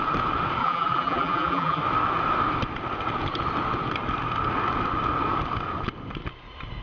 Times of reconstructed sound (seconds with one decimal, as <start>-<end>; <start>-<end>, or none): 0.6-1.8